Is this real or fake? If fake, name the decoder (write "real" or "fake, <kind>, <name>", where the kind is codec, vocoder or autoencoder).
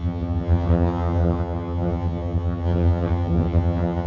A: fake, vocoder, HiFi-GAN